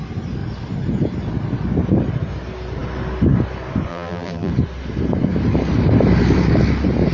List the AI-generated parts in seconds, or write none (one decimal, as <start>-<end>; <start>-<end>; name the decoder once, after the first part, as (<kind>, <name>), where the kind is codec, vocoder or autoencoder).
3.9-4.5 (vocoder, BigVGAN v2)